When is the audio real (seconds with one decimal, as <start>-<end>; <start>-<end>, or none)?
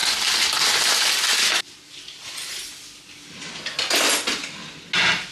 0.0-5.3